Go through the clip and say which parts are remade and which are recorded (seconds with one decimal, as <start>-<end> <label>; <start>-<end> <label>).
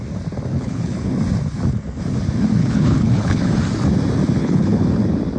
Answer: 0.0-0.5 recorded; 0.5-1.1 remade; 1.1-2.6 recorded; 2.6-3.6 remade; 3.6-4.4 recorded; 4.4-5.0 remade; 5.0-5.4 recorded